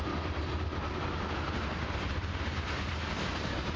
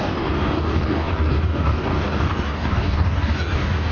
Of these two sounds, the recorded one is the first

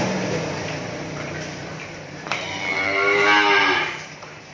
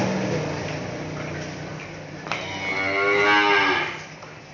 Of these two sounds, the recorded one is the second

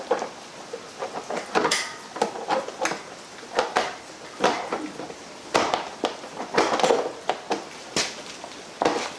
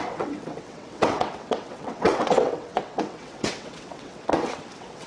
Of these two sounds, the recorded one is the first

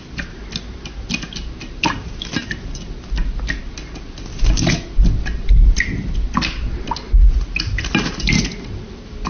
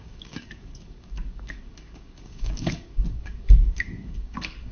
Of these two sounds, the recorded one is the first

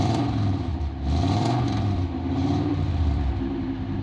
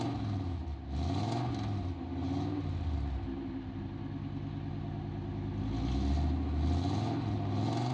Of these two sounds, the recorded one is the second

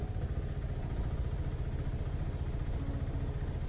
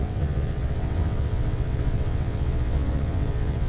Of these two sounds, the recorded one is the first